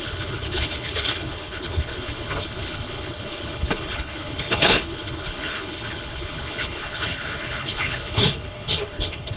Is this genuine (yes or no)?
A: no